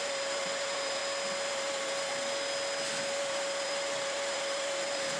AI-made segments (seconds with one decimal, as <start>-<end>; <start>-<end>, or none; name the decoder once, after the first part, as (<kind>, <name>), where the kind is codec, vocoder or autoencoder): 0.0-1.0 (vocoder, BigVGAN v2); 1.5-2.1; 3.2-5.2